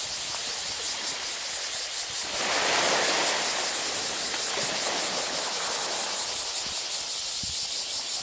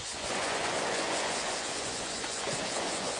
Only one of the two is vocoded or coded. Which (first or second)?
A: second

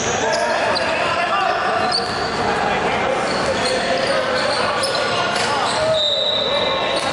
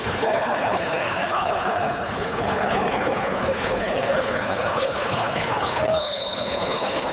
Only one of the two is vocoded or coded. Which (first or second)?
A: second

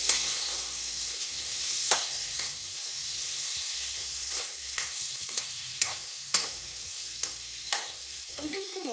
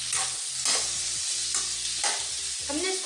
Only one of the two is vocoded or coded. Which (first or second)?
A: first